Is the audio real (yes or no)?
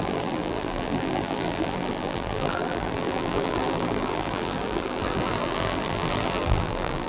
no